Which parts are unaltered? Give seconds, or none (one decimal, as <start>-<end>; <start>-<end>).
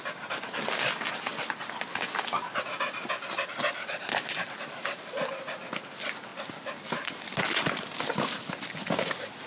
0.0-9.5